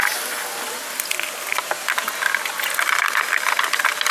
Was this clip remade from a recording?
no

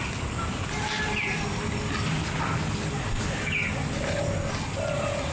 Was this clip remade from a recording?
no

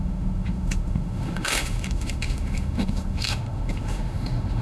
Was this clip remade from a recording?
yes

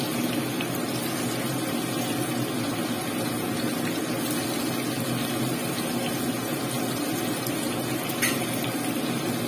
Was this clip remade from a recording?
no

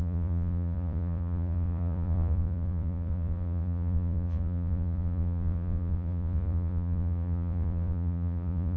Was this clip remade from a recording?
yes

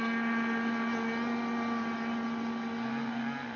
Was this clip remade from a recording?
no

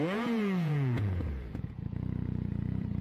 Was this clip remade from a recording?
yes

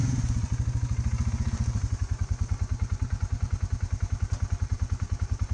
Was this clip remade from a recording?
yes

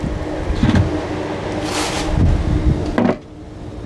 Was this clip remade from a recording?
no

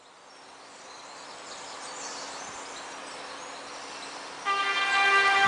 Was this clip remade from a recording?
no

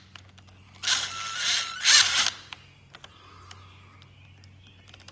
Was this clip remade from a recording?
no